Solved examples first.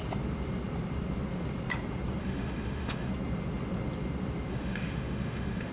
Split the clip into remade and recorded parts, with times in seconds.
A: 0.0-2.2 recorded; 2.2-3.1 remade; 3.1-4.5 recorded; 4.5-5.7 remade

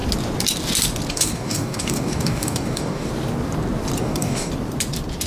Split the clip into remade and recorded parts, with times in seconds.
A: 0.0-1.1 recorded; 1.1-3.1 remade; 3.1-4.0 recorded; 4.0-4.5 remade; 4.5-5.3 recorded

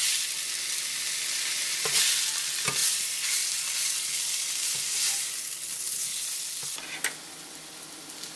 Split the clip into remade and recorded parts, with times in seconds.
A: 0.0-5.7 recorded; 5.7-6.4 remade; 6.4-8.4 recorded

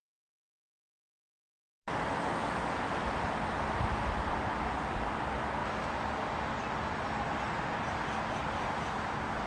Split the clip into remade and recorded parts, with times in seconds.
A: 0.0-9.5 recorded

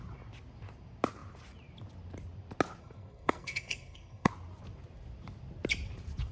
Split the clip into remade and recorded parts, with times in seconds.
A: 0.0-2.8 recorded; 2.8-4.3 remade; 4.3-6.3 recorded

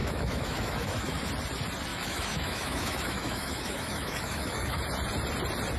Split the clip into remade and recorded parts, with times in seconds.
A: 0.0-1.3 remade; 1.3-1.9 recorded; 1.9-4.8 remade; 4.8-5.8 recorded